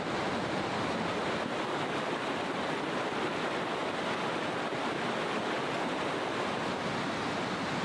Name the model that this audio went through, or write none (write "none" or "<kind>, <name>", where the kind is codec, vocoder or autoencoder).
none